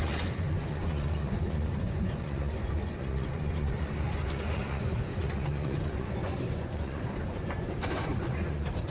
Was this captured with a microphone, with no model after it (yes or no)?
no